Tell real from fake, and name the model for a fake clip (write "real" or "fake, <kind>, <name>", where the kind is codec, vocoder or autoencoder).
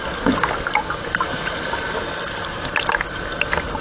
real